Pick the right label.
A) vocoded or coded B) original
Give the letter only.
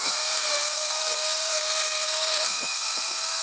A